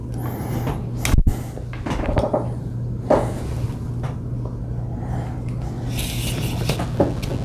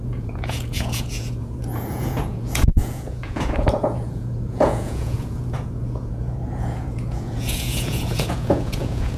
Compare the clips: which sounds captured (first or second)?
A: first